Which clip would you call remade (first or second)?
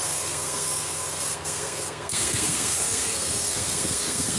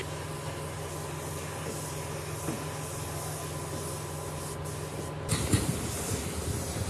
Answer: first